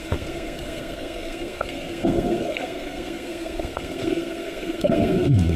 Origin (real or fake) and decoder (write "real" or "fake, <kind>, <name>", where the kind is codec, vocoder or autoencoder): fake, codec, SNAC